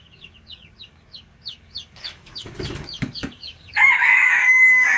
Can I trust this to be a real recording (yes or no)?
no